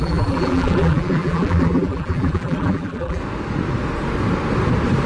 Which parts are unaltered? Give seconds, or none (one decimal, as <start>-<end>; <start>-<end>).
3.2-5.1